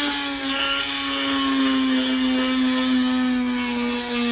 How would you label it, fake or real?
real